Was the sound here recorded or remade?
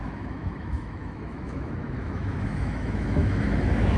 remade